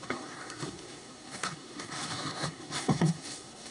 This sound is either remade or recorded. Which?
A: remade